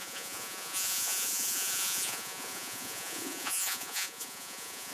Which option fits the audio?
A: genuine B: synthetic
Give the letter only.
B